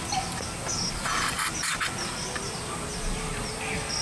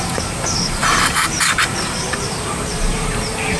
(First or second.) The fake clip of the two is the second